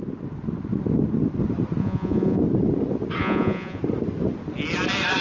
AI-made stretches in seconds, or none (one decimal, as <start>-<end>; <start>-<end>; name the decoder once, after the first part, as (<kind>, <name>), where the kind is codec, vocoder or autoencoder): 1.8-2.4 (vocoder, Vocos); 3.2-3.8